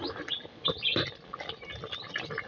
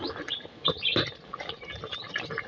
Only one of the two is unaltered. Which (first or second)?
first